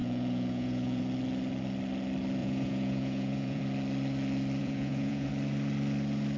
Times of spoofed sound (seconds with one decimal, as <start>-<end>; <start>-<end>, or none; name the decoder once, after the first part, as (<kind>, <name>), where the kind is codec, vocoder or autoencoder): 0.0-1.0 (vocoder, Vocos); 2.4-3.6; 4.6-5.3